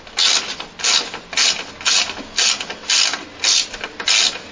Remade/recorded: recorded